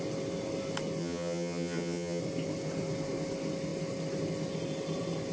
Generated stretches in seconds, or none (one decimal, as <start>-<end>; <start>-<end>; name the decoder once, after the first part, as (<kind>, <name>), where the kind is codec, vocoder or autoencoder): 1.0-2.2 (vocoder, HiFi-GAN)